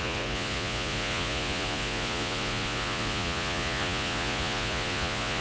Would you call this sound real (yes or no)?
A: no